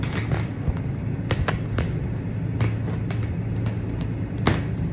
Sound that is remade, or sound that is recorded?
recorded